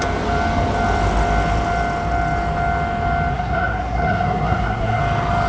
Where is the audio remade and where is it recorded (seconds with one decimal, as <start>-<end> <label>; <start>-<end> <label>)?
0.0-3.3 recorded; 3.3-5.0 remade; 5.0-5.5 recorded